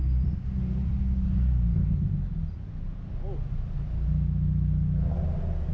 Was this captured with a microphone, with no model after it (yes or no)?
yes